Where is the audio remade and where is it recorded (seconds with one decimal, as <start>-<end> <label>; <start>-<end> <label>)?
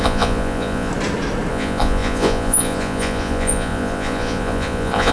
0.0-0.9 remade; 0.9-1.5 recorded; 1.5-5.1 remade